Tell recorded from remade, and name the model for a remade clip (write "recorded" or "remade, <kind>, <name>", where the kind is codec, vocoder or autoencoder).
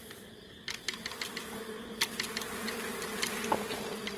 recorded